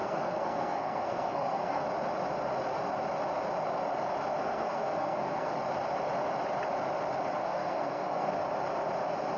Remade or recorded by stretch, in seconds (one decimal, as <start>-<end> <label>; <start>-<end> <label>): 0.0-1.8 remade; 1.8-4.4 recorded; 4.4-5.5 remade; 5.5-7.4 recorded; 7.4-8.3 remade; 8.3-9.4 recorded